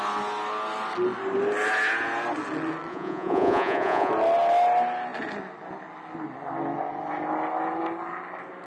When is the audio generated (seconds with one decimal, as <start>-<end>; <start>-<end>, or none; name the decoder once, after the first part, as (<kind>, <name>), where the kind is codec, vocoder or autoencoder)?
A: 2.9-4.1 (vocoder, Vocos)